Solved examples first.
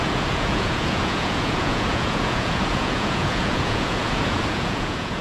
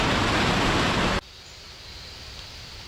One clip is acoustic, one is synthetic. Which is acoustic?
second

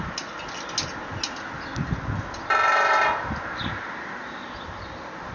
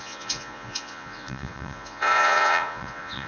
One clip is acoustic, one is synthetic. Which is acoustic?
first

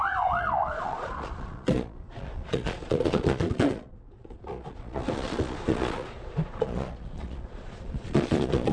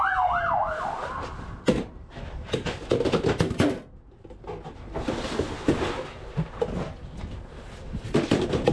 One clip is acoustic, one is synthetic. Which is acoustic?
second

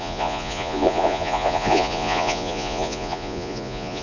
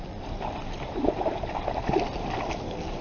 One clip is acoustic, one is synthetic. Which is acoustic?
second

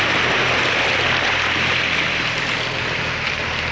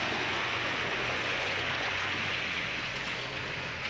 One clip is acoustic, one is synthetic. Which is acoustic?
first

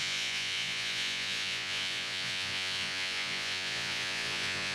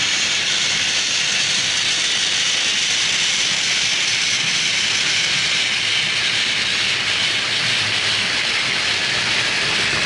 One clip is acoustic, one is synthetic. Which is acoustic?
second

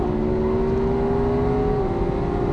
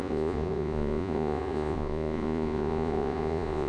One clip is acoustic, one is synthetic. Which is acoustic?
first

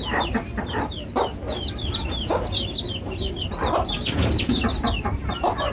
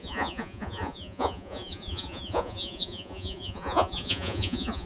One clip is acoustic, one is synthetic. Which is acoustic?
first